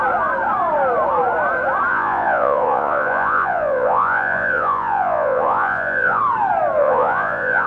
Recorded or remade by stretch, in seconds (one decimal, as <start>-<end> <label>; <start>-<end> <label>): 0.0-1.9 recorded; 1.9-6.2 remade; 6.2-6.8 recorded; 6.8-7.7 remade

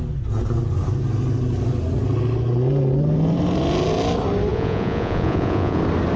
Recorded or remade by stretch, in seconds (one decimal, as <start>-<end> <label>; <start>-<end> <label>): 0.0-4.5 recorded; 4.5-5.8 remade; 5.8-6.2 recorded

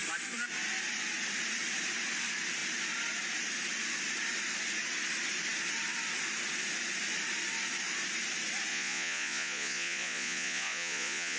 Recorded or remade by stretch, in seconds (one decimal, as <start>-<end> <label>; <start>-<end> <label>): 0.0-8.7 recorded; 8.7-11.4 remade

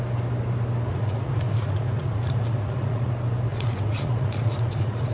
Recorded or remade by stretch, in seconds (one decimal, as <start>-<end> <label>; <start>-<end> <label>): 0.0-0.9 recorded; 0.9-3.1 remade; 3.1-3.5 recorded; 3.5-5.1 remade

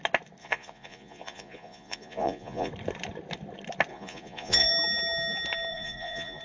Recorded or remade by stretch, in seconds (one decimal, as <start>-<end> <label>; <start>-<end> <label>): 0.0-0.4 recorded; 0.4-2.7 remade; 2.7-3.9 recorded; 3.9-4.7 remade; 4.7-5.7 recorded; 5.7-6.4 remade